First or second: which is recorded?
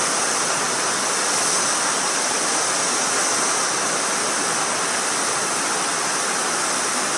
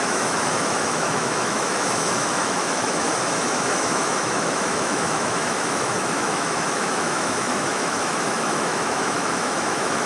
first